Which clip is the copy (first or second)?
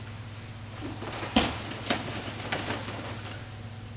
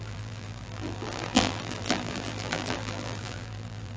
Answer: second